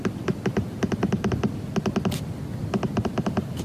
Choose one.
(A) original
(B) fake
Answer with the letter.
A